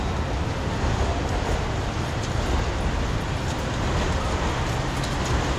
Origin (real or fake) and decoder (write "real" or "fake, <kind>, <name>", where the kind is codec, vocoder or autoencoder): real